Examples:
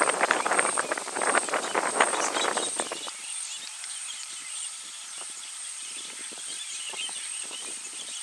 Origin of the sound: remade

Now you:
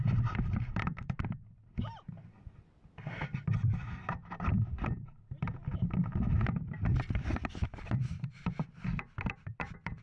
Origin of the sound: remade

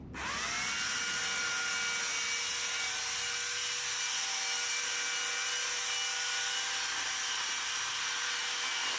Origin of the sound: recorded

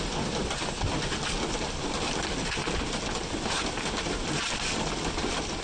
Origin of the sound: recorded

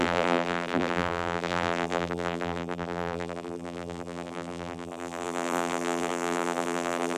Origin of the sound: remade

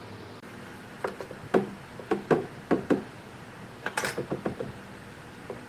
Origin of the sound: remade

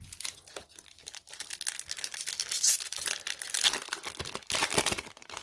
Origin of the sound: recorded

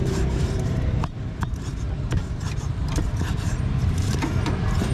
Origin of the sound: remade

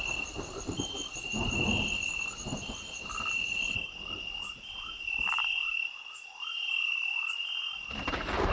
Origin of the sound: remade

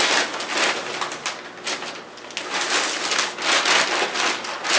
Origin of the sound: recorded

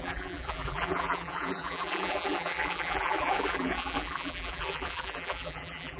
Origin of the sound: remade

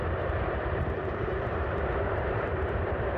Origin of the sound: remade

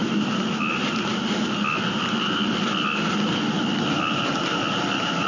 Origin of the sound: recorded